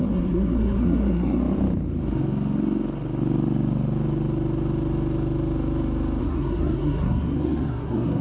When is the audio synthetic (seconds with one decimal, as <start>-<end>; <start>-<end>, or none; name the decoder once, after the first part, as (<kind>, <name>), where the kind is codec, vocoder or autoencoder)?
0.0-1.4 (codec, SNAC); 6.2-8.2